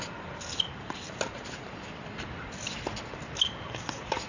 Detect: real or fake real